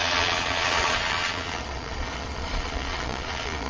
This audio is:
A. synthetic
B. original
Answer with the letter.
A